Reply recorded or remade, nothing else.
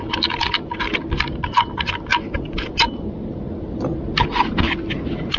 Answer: recorded